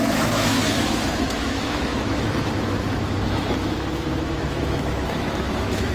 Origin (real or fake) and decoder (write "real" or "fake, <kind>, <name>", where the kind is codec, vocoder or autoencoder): fake, autoencoder, DAC-VAE